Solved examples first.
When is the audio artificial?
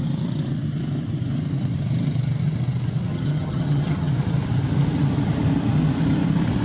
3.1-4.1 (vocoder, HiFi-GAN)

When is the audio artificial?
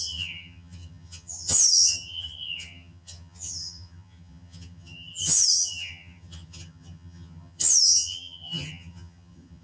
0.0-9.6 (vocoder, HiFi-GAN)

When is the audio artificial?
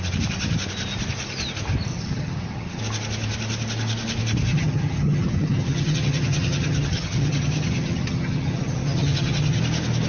1.9-2.8 (vocoder, HiFi-GAN); 4.5-9.6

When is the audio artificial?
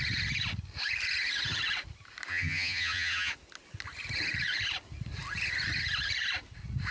2.3-3.3 (vocoder, HiFi-GAN)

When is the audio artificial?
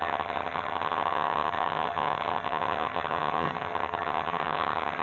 0.0-5.0 (vocoder, HiFi-GAN)